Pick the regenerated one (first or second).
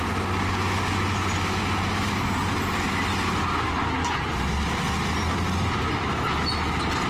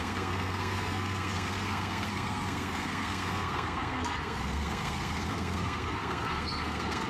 second